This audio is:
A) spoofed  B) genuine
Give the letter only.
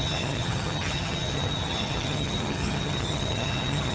A